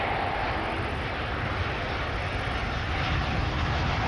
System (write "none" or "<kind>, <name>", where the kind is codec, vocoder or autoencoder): none